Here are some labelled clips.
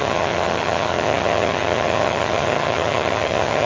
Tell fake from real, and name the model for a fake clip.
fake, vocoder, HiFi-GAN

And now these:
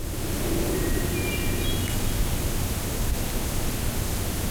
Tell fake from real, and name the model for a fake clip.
real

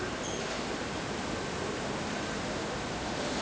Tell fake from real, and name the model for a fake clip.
real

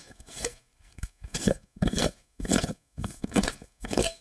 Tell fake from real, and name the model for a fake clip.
fake, codec, SNAC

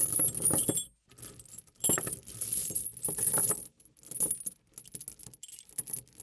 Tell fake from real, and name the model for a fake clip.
real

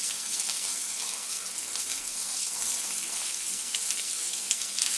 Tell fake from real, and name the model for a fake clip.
fake, codec, SNAC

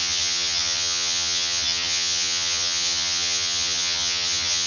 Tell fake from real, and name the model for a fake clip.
fake, vocoder, HiFi-GAN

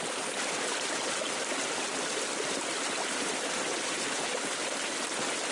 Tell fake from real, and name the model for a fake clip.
real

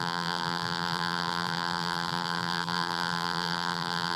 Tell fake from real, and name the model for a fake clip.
fake, vocoder, BigVGAN v2